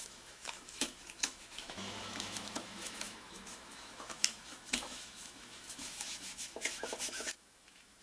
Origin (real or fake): fake